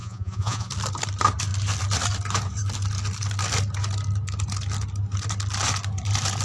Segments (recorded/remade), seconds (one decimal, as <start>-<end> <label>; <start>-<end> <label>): 0.0-0.7 remade; 0.7-6.4 recorded